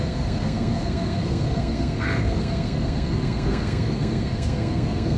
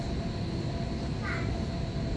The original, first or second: second